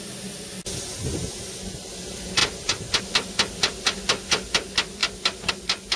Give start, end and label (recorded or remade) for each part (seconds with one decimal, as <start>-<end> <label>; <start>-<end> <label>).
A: 0.0-6.0 recorded